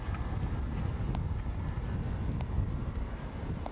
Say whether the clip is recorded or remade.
recorded